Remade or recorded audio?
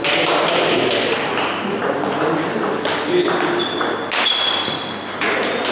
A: recorded